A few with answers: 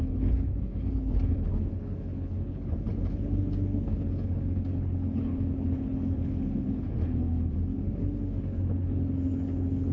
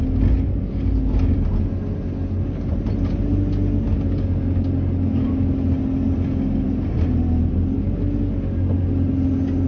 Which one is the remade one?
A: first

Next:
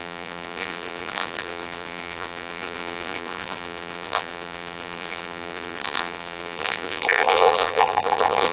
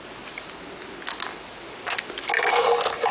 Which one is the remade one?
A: first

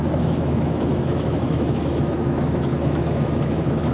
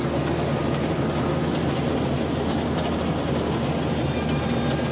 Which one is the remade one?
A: first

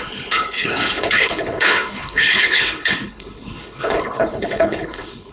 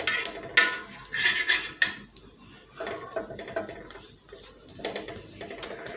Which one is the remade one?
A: first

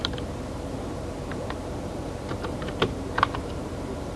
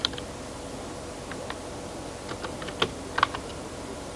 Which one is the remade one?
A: first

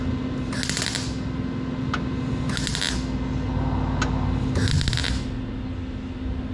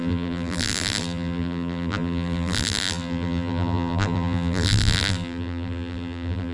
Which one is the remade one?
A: second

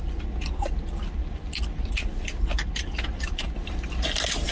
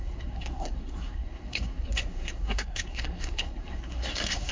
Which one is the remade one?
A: second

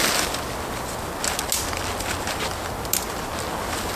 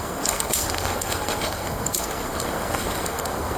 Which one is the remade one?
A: second